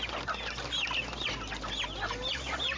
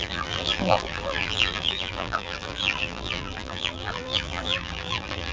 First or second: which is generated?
second